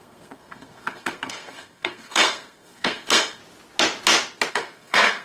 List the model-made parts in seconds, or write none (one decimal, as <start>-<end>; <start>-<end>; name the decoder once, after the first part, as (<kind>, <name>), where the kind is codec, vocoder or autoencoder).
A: 0.0-3.4 (codec, SNAC); 4.5-5.2